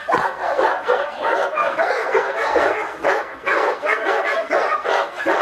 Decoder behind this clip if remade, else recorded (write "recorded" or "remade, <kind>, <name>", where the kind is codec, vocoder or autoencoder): remade, codec, SNAC